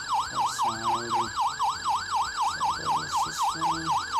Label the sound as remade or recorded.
recorded